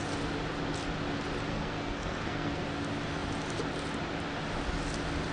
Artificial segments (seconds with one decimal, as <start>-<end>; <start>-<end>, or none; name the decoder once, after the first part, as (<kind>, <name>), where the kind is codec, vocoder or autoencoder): 1.5-2.6 (codec, SNAC)